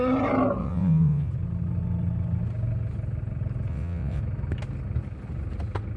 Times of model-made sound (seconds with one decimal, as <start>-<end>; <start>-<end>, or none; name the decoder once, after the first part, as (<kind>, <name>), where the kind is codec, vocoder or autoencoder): 0.6-1.3 (vocoder, WaveNeXt); 3.7-4.2